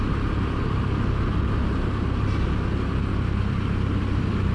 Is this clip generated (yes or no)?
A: no